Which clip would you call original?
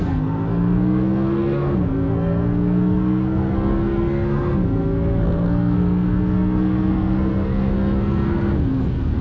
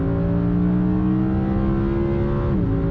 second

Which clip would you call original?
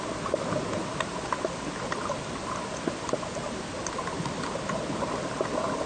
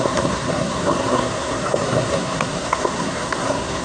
first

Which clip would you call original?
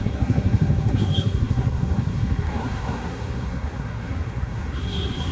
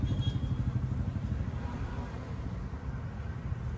second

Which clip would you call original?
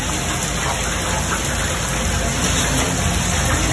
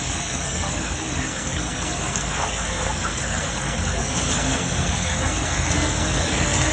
first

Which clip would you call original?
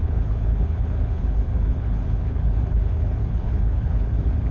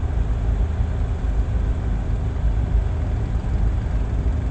second